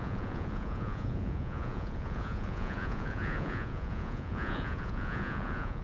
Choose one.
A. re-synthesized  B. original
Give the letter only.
A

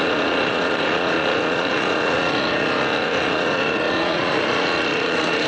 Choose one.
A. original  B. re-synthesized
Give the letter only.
B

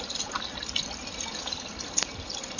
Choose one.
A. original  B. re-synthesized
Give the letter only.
A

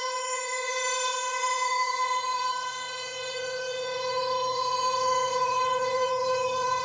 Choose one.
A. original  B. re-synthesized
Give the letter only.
B